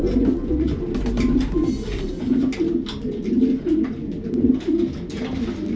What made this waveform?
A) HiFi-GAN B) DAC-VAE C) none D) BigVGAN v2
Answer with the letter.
C